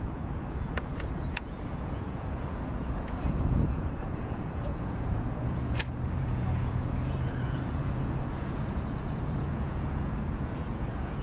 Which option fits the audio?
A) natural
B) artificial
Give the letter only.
B